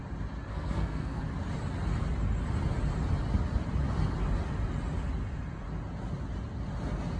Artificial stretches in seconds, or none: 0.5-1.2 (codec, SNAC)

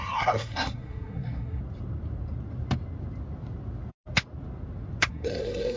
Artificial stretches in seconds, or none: 0.0-1.6 (codec, SNAC); 5.1-5.8

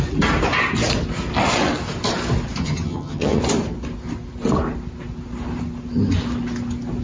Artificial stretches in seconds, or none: 2.6-3.4 (vocoder, HiFi-GAN)

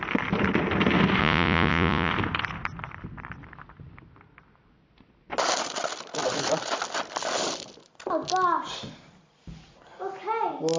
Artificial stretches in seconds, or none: 1.2-2.1 (vocoder, Vocos)

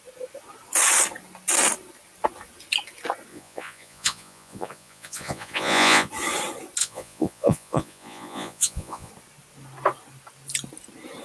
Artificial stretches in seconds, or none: 3.3-6.1 (vocoder, Vocos); 6.8-9.1

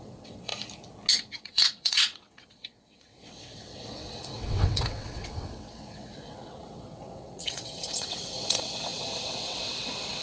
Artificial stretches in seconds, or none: 0.0-0.5 (vocoder, WaveNeXt); 1.1-10.2